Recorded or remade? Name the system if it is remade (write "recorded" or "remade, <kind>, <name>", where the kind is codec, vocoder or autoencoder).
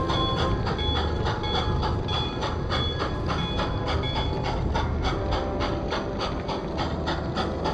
recorded